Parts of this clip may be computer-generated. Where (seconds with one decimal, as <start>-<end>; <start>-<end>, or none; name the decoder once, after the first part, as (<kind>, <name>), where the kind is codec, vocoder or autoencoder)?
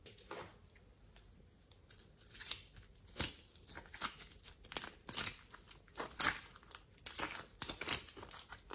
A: none